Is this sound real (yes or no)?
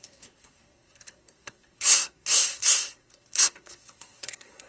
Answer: no